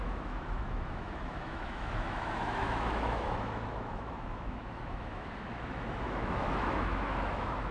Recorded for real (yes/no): no